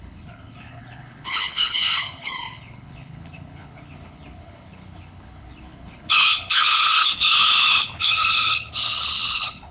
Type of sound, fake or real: fake